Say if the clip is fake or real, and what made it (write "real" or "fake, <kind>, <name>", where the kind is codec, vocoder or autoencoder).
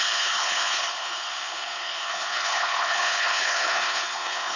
fake, codec, HILCodec